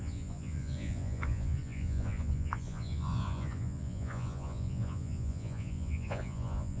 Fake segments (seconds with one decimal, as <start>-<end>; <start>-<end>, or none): 0.0-6.8